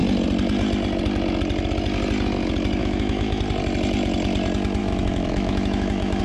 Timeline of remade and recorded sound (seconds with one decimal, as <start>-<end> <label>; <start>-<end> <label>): 0.0-2.8 recorded; 2.8-3.4 remade; 3.4-4.8 recorded; 4.8-6.2 remade